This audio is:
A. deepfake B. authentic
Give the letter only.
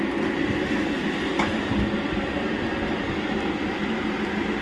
B